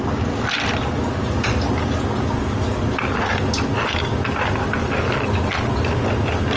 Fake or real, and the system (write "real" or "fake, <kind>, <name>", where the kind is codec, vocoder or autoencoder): real